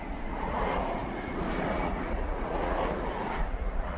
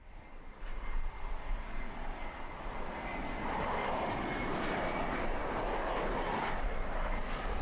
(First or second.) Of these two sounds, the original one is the second